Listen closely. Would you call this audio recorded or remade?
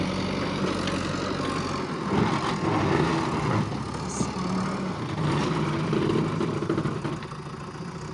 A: recorded